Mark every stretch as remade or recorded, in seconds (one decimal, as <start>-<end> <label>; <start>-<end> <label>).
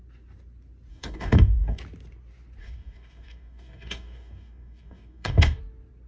0.0-0.9 recorded; 0.9-1.8 remade; 1.8-2.6 recorded; 2.6-5.6 remade; 5.6-6.1 recorded